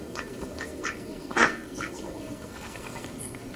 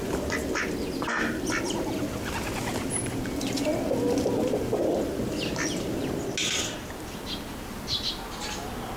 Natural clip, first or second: second